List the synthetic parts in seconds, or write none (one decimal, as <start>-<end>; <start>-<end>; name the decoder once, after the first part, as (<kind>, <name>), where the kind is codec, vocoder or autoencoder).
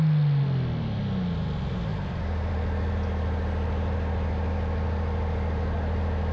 1.9-2.5 (vocoder, BigVGAN v2)